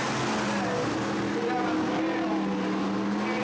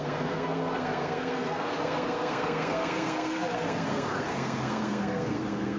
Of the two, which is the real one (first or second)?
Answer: first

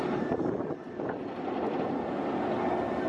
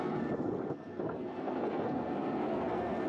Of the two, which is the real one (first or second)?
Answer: first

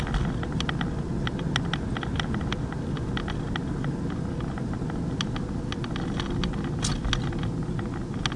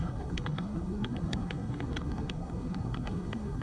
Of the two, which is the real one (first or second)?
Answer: first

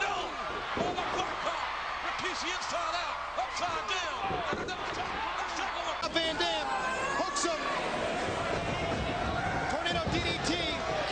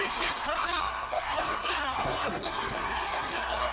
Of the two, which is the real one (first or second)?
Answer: first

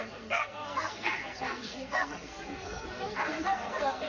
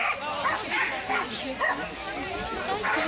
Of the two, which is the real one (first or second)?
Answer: second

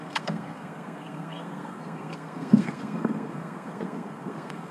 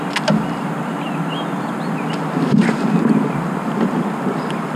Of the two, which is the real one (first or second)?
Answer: second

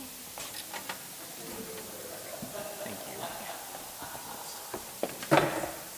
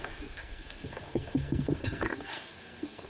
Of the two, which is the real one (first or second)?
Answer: first